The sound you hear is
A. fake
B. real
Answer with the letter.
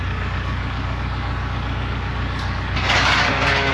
A